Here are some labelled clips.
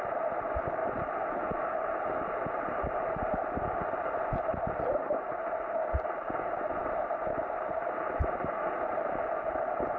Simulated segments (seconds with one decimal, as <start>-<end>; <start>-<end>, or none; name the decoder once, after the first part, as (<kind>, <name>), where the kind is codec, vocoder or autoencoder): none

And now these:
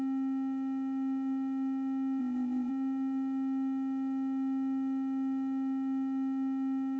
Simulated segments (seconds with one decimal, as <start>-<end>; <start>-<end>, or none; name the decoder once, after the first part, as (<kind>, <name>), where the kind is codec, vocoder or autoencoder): 2.2-2.7 (codec, ZipCodec)

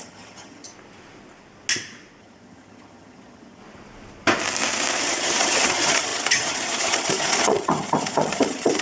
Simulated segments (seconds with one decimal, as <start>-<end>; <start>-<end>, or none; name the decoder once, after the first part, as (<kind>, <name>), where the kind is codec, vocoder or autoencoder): 0.0-0.7 (vocoder, HiFi-GAN); 2.2-3.6; 5.0-8.8

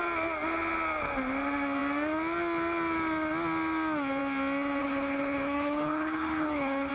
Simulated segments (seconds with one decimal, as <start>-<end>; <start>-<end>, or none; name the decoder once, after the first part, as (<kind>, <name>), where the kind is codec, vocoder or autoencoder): 4.8-6.9 (codec, HILCodec)

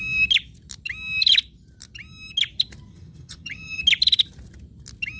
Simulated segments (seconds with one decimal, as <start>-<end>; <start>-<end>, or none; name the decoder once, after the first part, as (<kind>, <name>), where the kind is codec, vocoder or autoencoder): 2.9-3.8 (vocoder, HiFi-GAN)

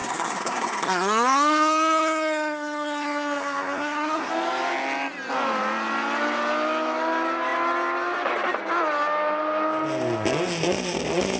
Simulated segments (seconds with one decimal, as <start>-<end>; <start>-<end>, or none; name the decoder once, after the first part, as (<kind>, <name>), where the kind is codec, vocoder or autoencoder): 0.0-4.3 (codec, SNAC)

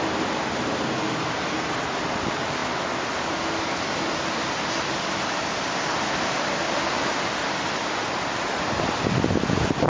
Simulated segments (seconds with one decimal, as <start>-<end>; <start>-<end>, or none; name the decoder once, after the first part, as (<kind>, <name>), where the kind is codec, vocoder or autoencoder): none

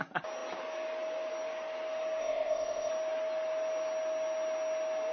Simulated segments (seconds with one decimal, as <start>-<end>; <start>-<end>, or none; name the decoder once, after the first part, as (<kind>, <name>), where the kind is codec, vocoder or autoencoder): 2.2-2.9 (codec, ZipCodec)